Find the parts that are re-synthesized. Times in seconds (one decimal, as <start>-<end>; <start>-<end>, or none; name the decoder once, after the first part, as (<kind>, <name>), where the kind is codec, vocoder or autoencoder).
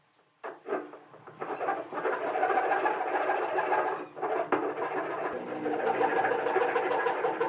none